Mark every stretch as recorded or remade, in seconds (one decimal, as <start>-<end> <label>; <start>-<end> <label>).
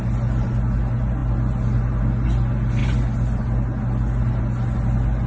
0.0-5.3 recorded